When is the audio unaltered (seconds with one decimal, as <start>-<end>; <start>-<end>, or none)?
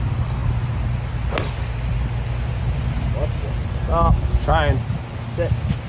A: 0.0-5.9